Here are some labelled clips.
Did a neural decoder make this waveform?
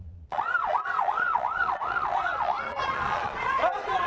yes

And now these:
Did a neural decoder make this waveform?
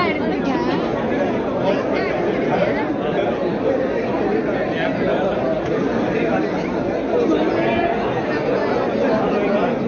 no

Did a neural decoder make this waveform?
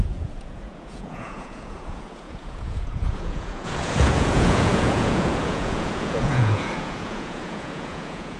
yes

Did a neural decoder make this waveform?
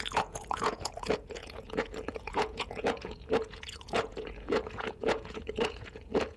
yes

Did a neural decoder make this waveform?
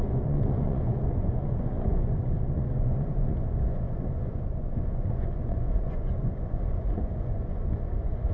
yes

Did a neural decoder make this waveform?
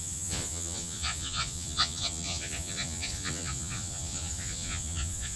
yes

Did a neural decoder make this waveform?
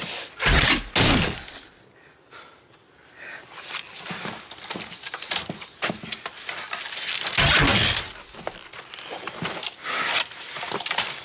no